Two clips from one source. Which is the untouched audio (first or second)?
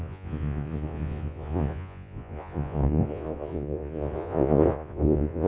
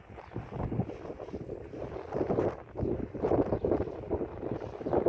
second